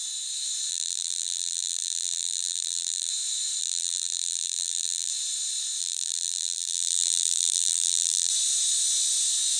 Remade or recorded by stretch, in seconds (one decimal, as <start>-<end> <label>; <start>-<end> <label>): 0.0-0.7 recorded; 0.7-3.1 remade; 3.1-3.6 recorded; 3.6-5.1 remade; 5.1-5.8 recorded; 5.8-8.3 remade; 8.3-9.6 recorded